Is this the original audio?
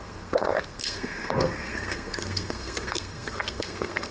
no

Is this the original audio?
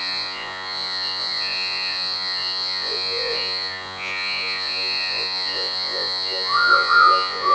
no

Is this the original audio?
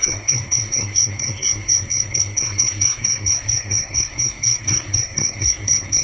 no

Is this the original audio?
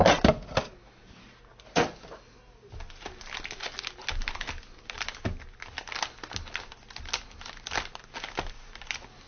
yes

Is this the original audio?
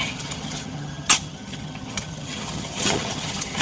no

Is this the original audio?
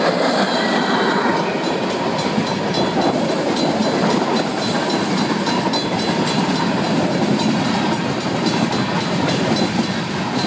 no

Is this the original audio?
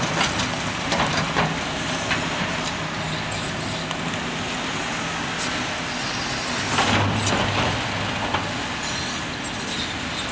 yes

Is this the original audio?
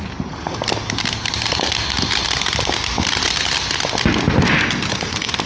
yes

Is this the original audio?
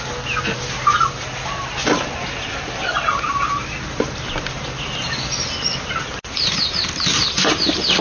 yes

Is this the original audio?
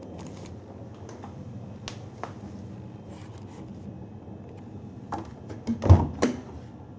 yes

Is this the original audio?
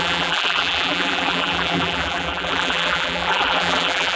no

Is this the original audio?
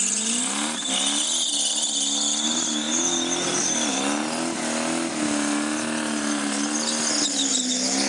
yes